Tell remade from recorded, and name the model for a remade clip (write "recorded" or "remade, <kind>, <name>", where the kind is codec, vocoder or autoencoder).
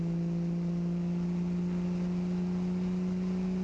recorded